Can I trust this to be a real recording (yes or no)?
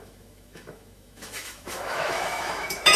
no